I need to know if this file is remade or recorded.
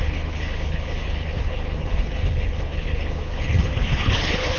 remade